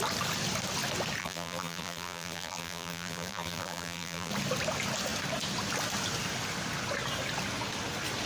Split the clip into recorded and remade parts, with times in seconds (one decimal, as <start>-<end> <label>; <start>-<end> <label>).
0.0-1.2 recorded; 1.2-4.3 remade; 4.3-8.3 recorded

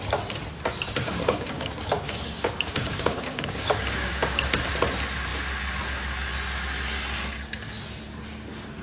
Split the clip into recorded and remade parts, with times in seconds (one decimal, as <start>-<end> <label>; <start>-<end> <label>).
0.0-1.2 recorded; 1.2-4.7 remade; 4.7-8.8 recorded

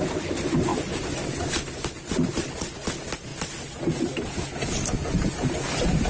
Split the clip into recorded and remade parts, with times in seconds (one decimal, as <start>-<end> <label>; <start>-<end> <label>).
0.0-6.1 recorded

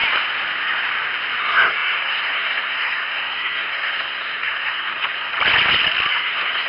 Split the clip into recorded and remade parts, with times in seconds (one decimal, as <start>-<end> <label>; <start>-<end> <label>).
0.0-1.4 recorded; 1.4-5.3 remade; 5.3-6.1 recorded; 6.1-6.7 remade

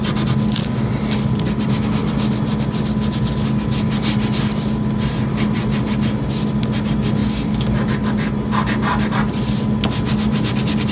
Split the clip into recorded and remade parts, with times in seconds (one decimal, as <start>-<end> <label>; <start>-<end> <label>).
0.0-10.9 recorded

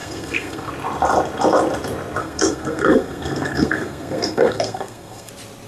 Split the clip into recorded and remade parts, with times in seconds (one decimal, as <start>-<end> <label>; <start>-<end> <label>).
0.0-0.7 remade; 0.7-2.2 recorded; 2.2-5.3 remade; 5.3-5.7 recorded